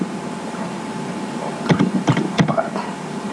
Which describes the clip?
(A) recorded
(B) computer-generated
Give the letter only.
B